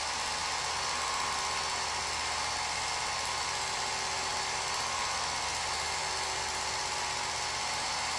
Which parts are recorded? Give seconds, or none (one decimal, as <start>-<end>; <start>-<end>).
0.0-8.2